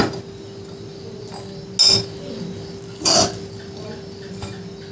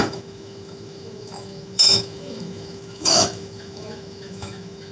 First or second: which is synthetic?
second